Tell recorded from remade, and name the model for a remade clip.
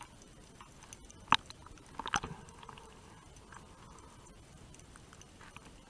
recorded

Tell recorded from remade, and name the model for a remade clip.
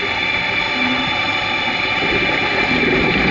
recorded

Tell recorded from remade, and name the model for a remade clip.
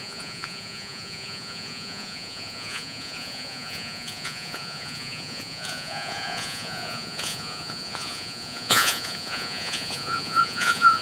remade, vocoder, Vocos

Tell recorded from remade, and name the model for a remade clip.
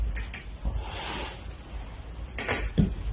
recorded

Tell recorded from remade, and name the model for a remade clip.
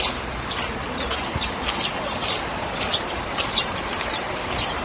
recorded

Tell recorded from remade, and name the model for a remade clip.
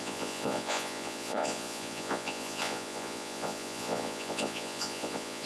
remade, vocoder, Vocos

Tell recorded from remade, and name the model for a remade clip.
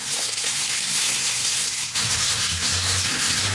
remade, codec, SNAC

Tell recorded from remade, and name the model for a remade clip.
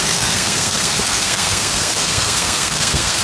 remade, codec, SNAC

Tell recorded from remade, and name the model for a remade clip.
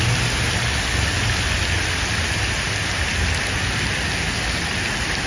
recorded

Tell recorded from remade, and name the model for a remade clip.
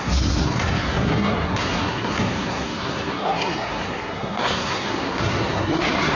remade, codec, SNAC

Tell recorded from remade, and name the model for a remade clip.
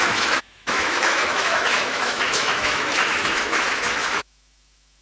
remade, autoencoder, DAC-VAE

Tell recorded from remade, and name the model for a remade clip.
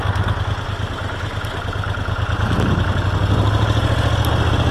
recorded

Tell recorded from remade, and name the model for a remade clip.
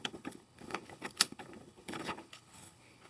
remade, codec, HILCodec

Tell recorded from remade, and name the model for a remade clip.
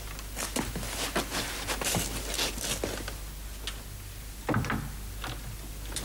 recorded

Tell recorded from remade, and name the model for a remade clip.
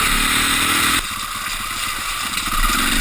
recorded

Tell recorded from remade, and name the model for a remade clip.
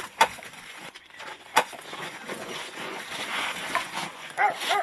remade, vocoder, Vocos